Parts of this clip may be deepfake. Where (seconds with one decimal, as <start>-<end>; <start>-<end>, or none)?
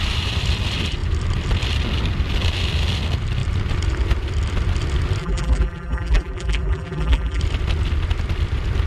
5.2-7.4